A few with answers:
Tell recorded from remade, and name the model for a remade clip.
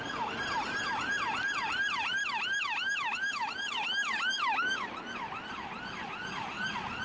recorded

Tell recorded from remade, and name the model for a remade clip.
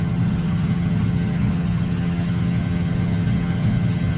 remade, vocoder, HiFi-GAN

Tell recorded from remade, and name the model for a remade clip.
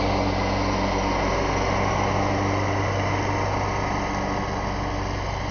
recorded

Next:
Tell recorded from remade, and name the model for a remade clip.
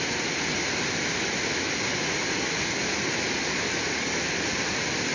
recorded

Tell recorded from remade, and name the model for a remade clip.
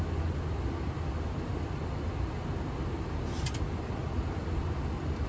recorded